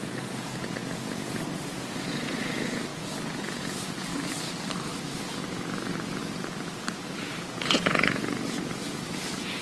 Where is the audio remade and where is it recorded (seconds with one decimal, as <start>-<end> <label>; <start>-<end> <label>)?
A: 0.0-4.1 remade; 4.1-5.4 recorded; 5.4-6.2 remade; 6.2-7.4 recorded; 7.4-9.6 remade